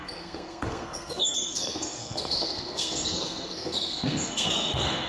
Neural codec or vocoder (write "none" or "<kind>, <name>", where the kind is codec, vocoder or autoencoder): codec, SNAC